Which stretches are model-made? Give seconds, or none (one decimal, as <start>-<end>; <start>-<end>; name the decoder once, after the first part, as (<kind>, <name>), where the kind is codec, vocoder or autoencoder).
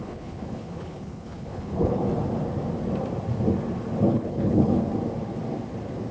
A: 0.0-2.0 (codec, HILCodec); 4.1-4.8